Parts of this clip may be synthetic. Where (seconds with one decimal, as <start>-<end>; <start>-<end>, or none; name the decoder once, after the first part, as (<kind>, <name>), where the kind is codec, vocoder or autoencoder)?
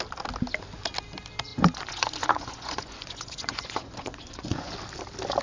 1.5-4.7 (vocoder, Vocos)